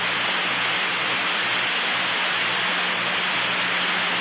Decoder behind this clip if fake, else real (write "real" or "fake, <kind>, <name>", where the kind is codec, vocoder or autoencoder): real